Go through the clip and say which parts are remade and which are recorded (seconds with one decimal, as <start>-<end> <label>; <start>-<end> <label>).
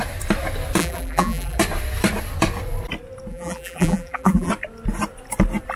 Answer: 0.0-0.8 recorded; 0.8-1.6 remade; 1.6-3.3 recorded; 3.3-4.5 remade; 4.5-5.8 recorded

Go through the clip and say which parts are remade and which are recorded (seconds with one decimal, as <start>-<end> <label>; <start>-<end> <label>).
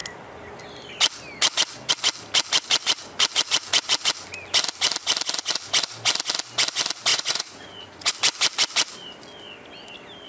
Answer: 0.0-7.1 recorded; 7.1-8.1 remade; 8.1-10.3 recorded